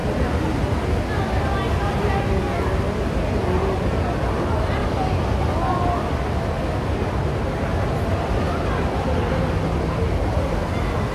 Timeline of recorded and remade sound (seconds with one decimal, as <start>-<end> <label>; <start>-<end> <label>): 0.0-11.1 recorded